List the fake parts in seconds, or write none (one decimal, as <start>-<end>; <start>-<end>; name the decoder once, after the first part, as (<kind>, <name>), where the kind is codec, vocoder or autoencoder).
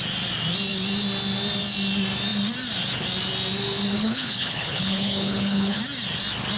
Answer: 3.9-5.8 (codec, HILCodec)